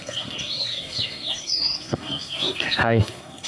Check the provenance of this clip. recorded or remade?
remade